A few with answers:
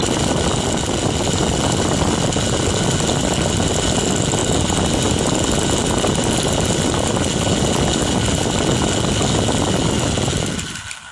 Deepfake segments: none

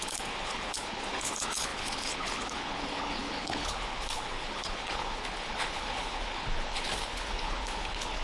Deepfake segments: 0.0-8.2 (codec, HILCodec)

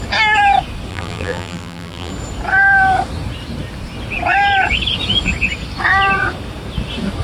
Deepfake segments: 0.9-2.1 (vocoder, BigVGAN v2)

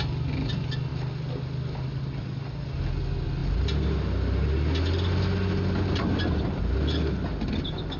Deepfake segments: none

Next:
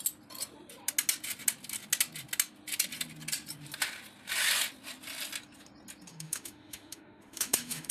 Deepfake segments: 6.1-7.9 (autoencoder, DAC-VAE)

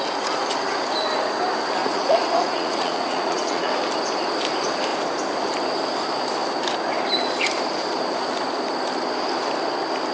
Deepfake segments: 1.8-3.7 (vocoder, Vocos)